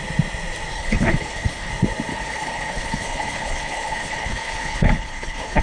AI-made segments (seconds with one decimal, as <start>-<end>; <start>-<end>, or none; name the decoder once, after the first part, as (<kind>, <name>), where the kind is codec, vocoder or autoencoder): 0.7-1.7 (codec, HILCodec); 2.1-5.6